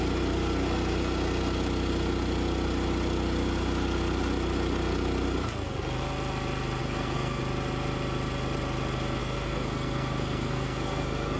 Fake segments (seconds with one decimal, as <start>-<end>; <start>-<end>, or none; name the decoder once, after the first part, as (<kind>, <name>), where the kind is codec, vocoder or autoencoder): 6.8-7.4 (codec, SNAC); 9.2-11.4